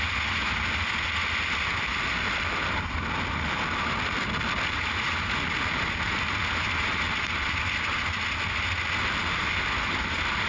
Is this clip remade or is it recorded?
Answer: recorded